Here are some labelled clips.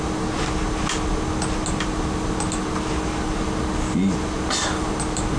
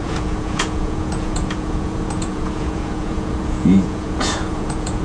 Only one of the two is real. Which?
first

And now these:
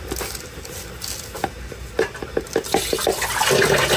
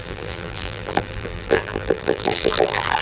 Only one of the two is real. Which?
first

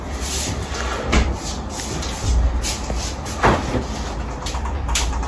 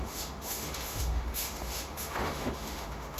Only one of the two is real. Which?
first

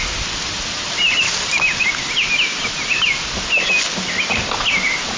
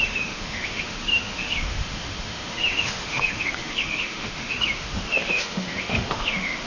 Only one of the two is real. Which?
first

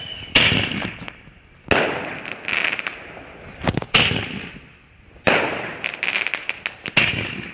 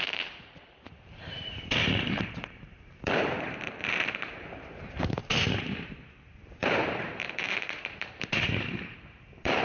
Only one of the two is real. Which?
first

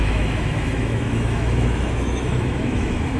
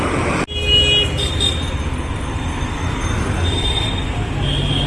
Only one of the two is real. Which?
second